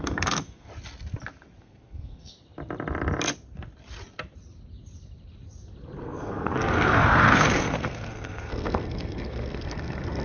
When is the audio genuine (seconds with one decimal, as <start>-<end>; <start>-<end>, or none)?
0.7-1.6; 2.3-6.0